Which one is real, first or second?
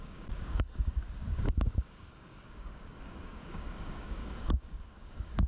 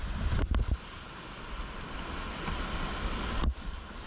second